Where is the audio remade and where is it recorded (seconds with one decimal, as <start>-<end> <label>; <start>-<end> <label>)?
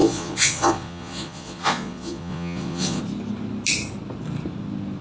0.0-3.0 remade; 3.0-5.0 recorded